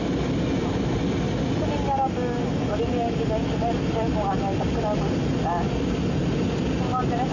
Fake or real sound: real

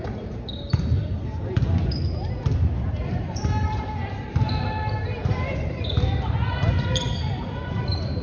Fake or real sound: fake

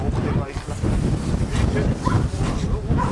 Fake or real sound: real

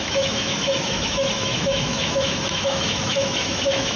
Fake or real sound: fake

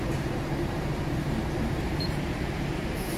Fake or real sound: fake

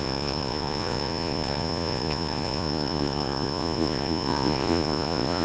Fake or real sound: fake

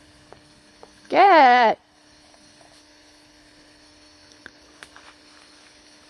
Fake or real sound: fake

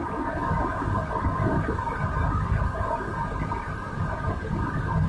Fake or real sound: fake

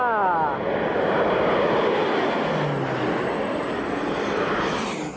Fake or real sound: real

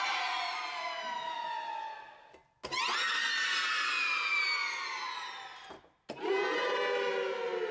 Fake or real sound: real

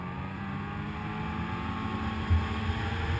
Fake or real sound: real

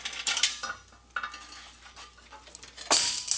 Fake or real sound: real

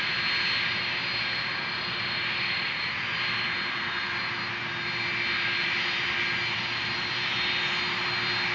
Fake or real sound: real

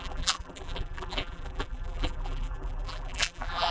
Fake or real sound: fake